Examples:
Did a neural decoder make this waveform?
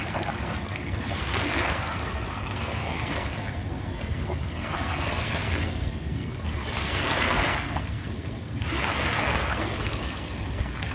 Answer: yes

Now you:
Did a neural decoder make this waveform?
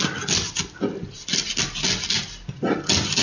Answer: no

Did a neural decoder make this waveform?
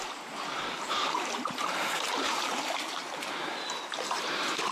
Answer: yes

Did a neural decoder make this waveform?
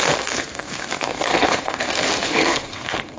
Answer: yes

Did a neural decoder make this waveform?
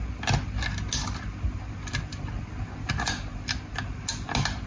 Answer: no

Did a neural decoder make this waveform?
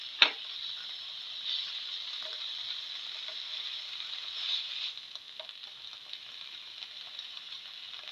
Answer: no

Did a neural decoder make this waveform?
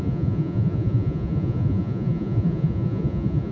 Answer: yes